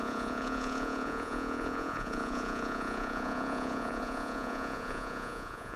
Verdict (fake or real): fake